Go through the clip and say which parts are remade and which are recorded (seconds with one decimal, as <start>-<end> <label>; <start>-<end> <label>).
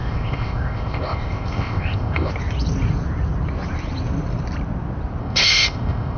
0.0-2.3 remade; 2.3-5.2 recorded; 5.2-6.2 remade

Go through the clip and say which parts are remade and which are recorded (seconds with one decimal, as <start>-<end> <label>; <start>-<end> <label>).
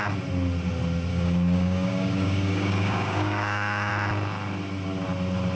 0.0-1.1 recorded; 1.1-3.9 remade; 3.9-5.6 recorded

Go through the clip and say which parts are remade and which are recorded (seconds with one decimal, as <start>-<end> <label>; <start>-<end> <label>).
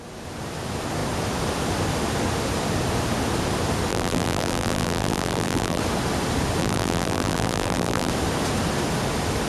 0.0-3.9 recorded; 3.9-5.8 remade; 5.8-6.6 recorded; 6.6-8.1 remade; 8.1-9.5 recorded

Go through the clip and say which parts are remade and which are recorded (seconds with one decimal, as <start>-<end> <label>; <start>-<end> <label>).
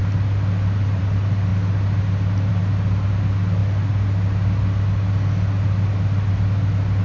0.0-7.0 recorded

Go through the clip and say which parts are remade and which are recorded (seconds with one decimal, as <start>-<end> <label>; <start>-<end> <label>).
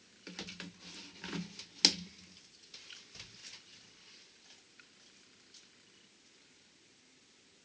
0.0-7.6 recorded